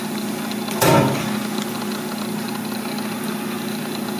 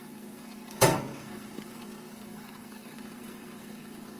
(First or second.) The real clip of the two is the first